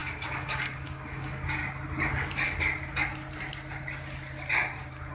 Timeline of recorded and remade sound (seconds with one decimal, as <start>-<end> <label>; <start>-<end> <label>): 0.0-1.6 remade; 1.6-5.1 recorded